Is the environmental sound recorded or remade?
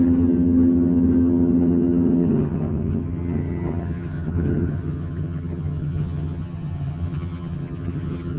remade